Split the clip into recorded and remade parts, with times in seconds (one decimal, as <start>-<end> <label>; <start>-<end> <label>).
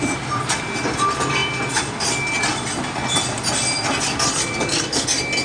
0.0-5.4 recorded